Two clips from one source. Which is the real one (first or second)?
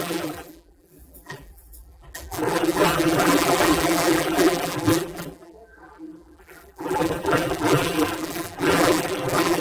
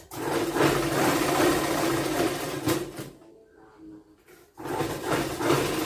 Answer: second